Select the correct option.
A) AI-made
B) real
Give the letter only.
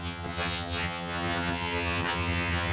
A